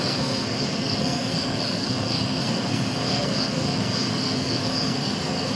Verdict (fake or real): fake